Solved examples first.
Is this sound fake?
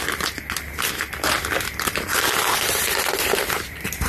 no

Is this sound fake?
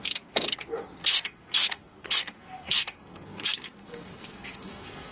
yes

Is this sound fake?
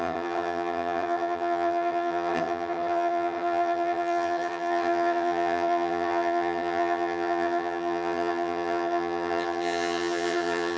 yes